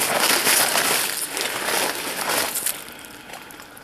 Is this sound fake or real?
real